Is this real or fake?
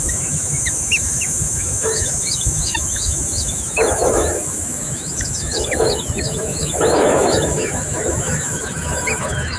fake